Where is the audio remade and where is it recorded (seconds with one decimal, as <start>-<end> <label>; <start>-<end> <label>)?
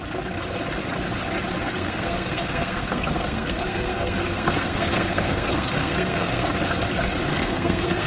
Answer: 0.0-1.6 recorded; 1.6-6.5 remade; 6.5-7.3 recorded; 7.3-8.1 remade